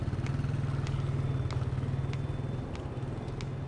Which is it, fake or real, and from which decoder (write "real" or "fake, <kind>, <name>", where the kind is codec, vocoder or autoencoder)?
real